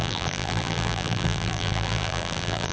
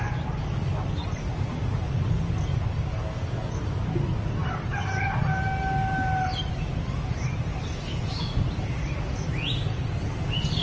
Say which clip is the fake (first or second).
first